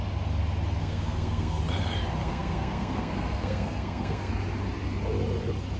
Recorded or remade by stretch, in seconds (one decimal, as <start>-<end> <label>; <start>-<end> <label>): 0.0-0.8 recorded; 0.8-1.6 remade; 1.6-2.2 recorded; 2.2-4.3 remade; 4.3-5.8 recorded

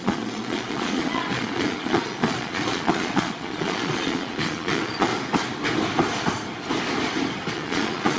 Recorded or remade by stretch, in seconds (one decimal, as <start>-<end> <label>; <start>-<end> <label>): 0.0-5.1 remade; 5.1-7.5 recorded; 7.5-8.2 remade

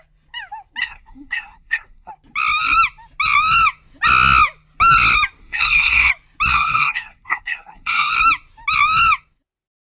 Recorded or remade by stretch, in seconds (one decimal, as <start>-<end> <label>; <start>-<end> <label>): 0.0-0.8 recorded; 0.8-2.1 remade; 2.1-5.4 recorded; 5.4-6.1 remade; 6.1-6.5 recorded; 6.5-8.1 remade; 8.1-9.8 recorded